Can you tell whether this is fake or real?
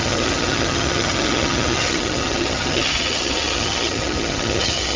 fake